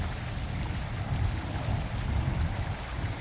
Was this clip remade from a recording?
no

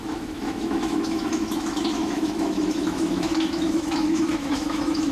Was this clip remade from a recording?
yes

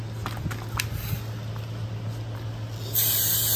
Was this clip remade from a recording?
no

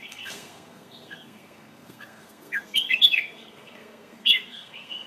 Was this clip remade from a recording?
yes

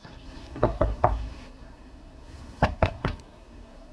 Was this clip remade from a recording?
yes